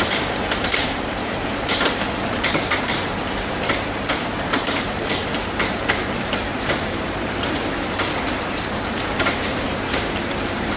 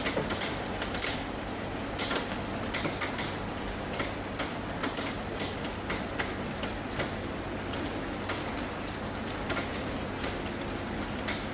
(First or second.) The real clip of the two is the second